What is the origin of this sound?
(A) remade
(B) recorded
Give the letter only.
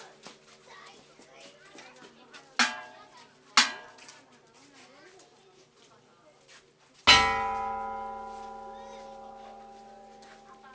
B